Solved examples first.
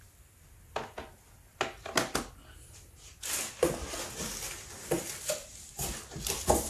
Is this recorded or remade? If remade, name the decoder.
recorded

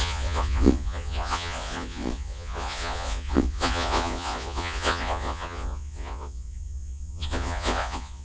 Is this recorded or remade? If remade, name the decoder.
remade, vocoder, Vocos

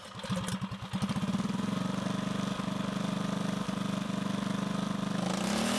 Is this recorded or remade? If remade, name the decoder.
recorded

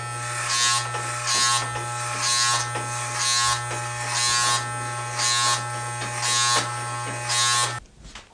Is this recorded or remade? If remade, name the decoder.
recorded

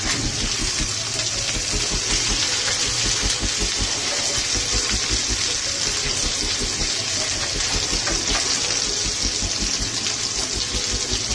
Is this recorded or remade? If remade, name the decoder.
recorded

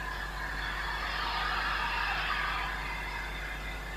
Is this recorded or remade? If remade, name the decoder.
recorded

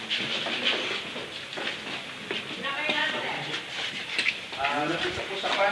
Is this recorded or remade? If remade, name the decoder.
recorded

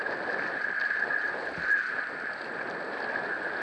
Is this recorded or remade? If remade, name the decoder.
recorded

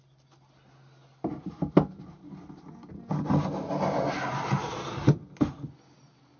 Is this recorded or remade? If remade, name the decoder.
recorded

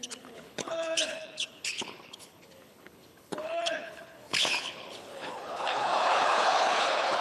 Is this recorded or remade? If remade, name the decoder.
remade, codec, HILCodec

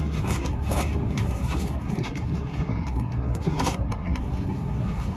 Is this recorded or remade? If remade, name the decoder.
remade, codec, SNAC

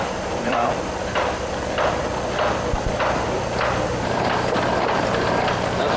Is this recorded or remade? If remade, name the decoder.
remade, vocoder, BigVGAN v2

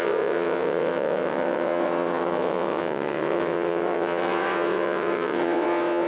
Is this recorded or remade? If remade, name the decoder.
remade, vocoder, WaveNeXt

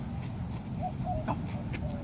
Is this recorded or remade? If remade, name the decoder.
recorded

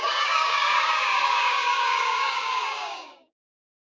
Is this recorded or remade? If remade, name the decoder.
remade, codec, DAC